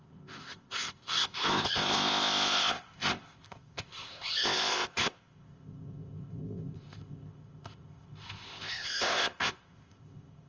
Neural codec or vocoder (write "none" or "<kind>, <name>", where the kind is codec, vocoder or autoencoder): codec, ZipCodec